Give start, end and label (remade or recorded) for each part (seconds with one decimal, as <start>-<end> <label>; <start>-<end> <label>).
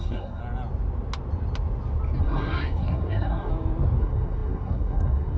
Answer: 0.0-0.4 remade; 0.4-2.2 recorded; 2.2-3.5 remade; 3.5-4.0 recorded; 4.0-5.4 remade